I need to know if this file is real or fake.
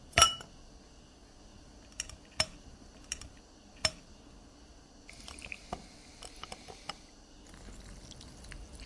real